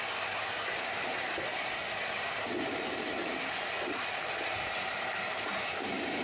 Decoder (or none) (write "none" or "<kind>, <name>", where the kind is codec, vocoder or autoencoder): none